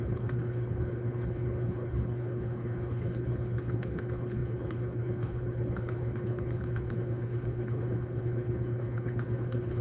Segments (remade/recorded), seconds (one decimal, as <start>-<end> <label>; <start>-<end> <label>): 0.0-9.8 remade